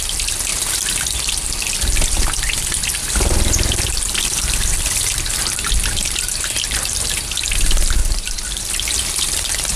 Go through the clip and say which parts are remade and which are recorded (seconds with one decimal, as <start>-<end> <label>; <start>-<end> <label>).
0.0-8.0 recorded; 8.0-8.7 remade; 8.7-9.8 recorded